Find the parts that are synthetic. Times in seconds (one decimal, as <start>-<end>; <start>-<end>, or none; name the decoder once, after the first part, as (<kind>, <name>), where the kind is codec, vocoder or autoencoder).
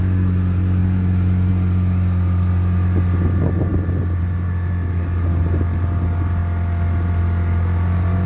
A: none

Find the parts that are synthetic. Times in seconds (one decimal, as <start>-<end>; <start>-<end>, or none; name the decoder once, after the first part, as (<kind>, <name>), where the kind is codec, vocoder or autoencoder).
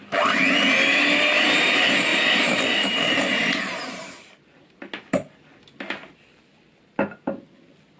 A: 2.1-4.7 (vocoder, BigVGAN v2)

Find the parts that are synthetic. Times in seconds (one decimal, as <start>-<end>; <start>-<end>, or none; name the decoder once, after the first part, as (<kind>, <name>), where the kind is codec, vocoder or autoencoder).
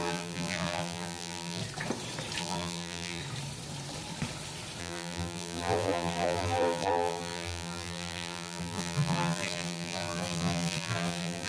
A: 0.0-1.6 (vocoder, BigVGAN v2); 2.4-3.2; 4.8-11.5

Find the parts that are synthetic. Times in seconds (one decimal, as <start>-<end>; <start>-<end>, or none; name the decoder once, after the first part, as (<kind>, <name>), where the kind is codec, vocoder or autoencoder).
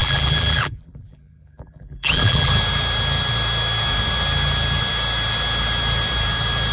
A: 0.0-2.5 (vocoder, BigVGAN v2)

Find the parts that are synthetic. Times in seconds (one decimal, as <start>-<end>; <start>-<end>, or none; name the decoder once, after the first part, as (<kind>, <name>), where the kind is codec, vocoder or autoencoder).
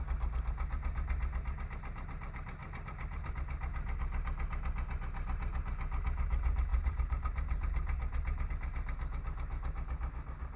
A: 2.6-3.3 (vocoder, BigVGAN v2); 6.7-8.5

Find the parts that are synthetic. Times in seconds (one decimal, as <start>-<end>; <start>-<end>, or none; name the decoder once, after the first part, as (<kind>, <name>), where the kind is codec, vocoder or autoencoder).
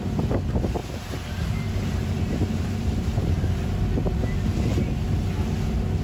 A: 0.8-3.7 (vocoder, BigVGAN v2)